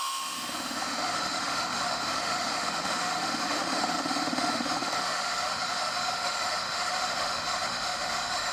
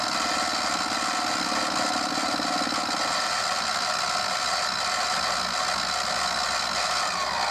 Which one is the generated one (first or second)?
first